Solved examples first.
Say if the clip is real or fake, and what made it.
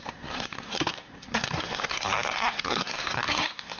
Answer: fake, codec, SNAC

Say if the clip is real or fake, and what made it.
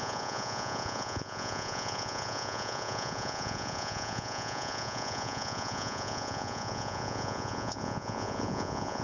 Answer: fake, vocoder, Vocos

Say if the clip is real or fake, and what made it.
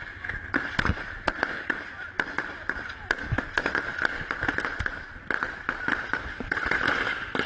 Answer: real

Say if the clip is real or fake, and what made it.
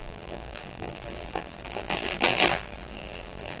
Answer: fake, vocoder, BigVGAN v2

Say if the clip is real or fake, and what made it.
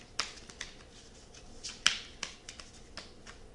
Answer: real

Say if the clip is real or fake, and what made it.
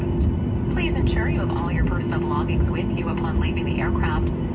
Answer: real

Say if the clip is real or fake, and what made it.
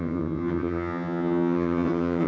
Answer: fake, vocoder, HiFi-GAN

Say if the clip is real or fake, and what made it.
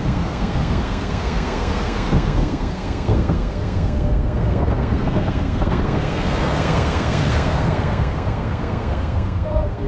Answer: fake, codec, SNAC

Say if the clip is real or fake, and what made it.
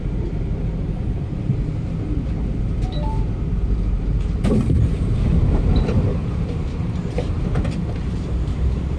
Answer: fake, vocoder, BigVGAN v2